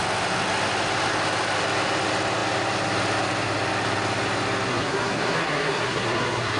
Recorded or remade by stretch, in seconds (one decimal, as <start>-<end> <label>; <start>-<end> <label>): 0.0-4.7 recorded; 4.7-6.6 remade